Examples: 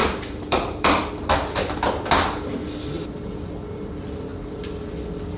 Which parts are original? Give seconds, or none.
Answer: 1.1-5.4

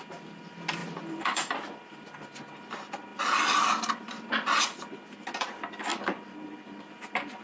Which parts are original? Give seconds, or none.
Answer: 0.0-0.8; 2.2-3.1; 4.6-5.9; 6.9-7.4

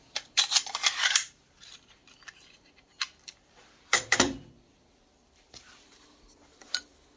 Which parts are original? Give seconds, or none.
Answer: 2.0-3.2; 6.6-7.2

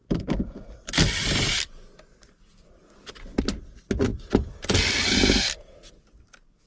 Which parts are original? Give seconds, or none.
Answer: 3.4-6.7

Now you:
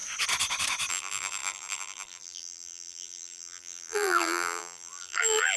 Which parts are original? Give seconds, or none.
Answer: 0.0-0.9

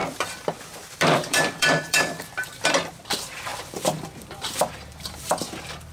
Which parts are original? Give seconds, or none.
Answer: none